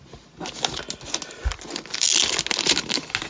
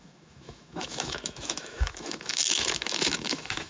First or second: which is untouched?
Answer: first